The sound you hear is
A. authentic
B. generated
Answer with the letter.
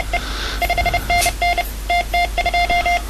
A